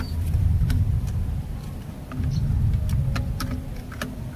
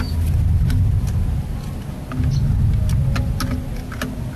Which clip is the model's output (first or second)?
first